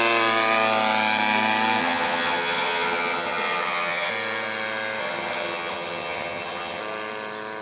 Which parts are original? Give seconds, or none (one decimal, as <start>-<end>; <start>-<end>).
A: 0.0-1.8; 4.1-5.0; 6.8-7.6